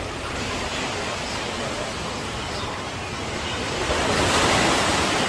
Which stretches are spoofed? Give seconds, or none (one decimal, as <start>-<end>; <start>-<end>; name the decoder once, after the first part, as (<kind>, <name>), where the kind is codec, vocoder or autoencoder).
none